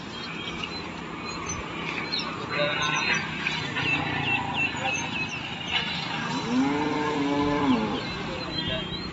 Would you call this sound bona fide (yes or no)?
yes